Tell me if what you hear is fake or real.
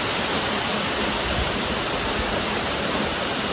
real